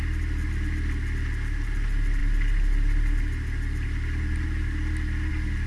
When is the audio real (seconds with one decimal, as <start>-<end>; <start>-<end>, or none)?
0.0-5.7